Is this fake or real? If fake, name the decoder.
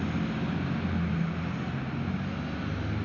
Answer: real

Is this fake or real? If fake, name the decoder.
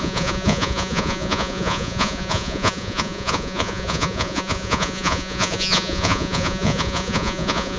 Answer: fake, vocoder, Vocos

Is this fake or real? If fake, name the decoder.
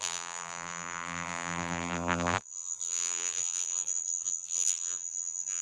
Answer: fake, vocoder, BigVGAN v2